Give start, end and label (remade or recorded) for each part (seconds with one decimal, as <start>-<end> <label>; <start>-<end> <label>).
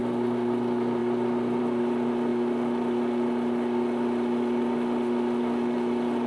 0.0-6.3 recorded